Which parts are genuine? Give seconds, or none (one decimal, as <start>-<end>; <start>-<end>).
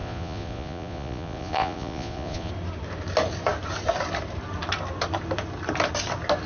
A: 2.5-6.5